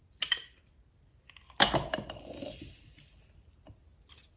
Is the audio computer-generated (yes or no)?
no